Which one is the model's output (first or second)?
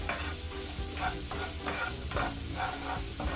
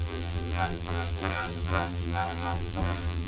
second